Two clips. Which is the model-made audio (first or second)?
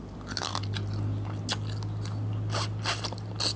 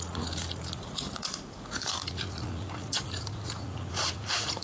second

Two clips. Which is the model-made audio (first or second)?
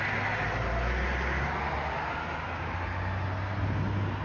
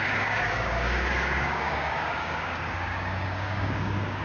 second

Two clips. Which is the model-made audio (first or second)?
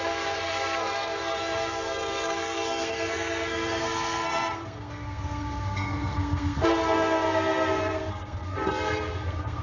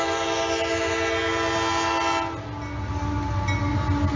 first